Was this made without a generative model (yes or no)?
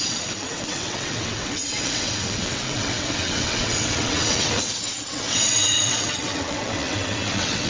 no